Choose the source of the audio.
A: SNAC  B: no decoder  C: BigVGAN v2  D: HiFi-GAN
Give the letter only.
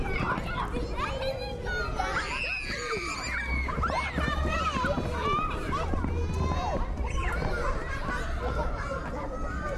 B